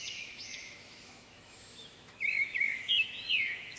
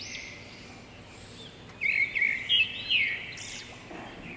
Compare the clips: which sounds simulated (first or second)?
first